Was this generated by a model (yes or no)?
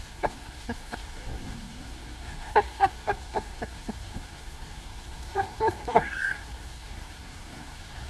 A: yes